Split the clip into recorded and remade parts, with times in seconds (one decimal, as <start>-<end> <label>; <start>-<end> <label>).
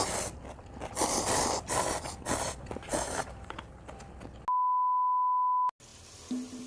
0.0-2.9 recorded; 2.9-3.6 remade; 3.6-6.7 recorded